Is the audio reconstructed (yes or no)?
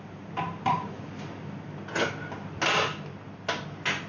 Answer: no